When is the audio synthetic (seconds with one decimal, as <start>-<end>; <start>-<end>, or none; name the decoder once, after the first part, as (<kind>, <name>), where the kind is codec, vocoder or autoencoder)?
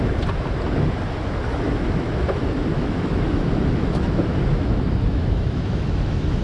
1.5-2.1 (autoencoder, DAC-VAE); 2.8-6.4